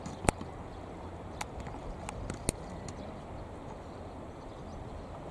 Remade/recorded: recorded